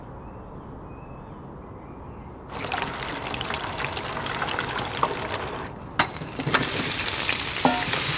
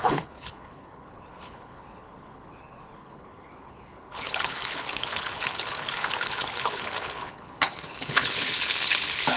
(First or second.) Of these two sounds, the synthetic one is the second